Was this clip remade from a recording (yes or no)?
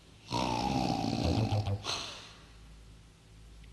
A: no